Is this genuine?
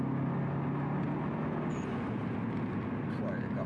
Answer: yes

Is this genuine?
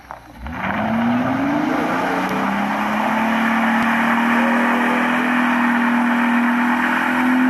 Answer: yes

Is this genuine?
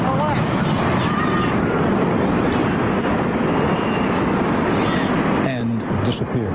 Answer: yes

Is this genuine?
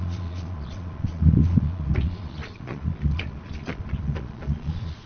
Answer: no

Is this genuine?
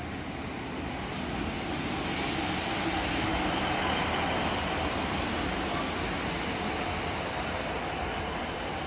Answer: yes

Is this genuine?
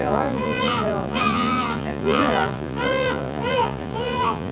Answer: no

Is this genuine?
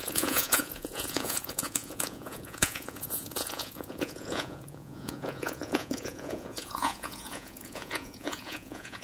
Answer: no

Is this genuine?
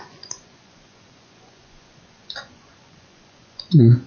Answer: no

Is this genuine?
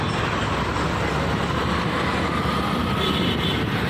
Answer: yes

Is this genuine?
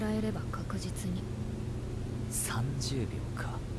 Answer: yes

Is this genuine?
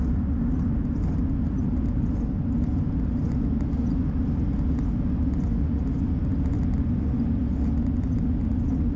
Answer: yes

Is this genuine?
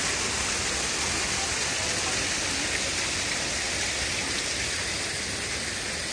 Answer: yes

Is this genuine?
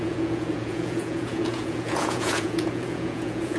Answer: no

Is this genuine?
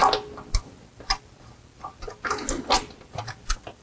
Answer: yes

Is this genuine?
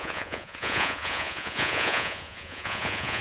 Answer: no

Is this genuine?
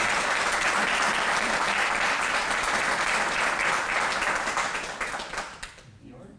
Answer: yes